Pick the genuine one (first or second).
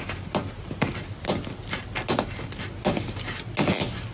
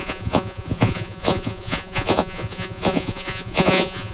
first